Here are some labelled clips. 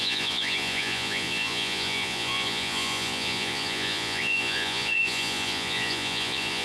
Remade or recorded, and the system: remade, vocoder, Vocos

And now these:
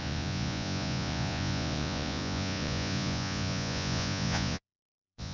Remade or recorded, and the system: remade, vocoder, Vocos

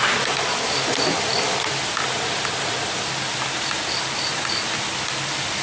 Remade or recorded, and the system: recorded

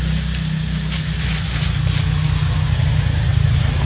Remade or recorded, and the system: recorded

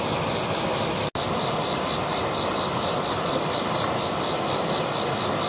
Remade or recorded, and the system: recorded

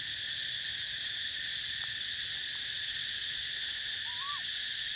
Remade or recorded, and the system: recorded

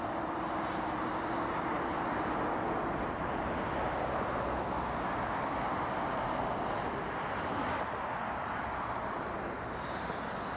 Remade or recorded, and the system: recorded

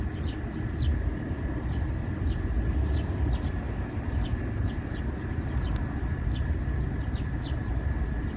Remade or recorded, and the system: recorded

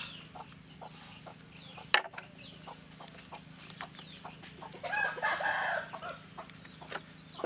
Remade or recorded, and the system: recorded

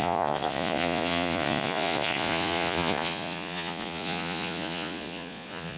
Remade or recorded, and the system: remade, vocoder, Vocos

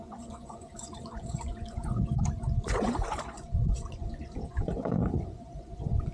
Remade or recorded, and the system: remade, vocoder, Vocos